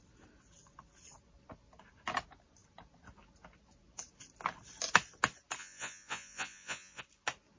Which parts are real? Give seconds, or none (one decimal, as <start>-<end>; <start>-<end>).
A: 0.0-5.6; 7.0-7.6